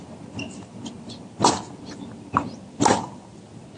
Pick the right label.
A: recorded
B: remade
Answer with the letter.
A